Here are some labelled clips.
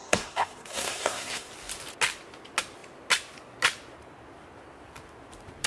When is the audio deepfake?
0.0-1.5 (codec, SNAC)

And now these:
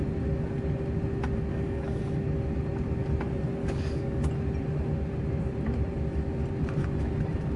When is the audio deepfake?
1.5-2.0 (codec, DAC); 3.6-4.2

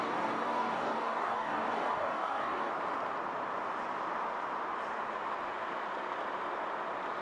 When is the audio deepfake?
0.0-2.7 (codec, DAC)

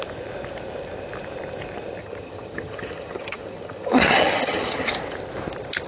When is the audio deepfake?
2.0-4.9 (vocoder, HiFi-GAN)

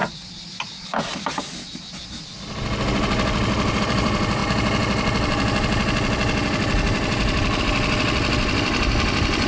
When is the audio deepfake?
3.8-4.4 (vocoder, BigVGAN v2); 7.6-9.5

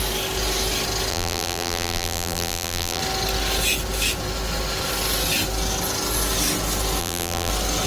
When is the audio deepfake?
1.1-3.0 (vocoder, BigVGAN v2); 7.0-7.5

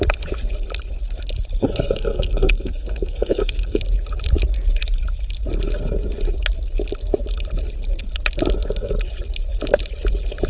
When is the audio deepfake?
1.6-3.8 (codec, SNAC)

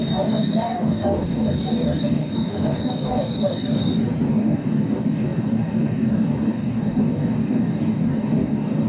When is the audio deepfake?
0.0-3.8 (codec, DAC); 4.3-8.9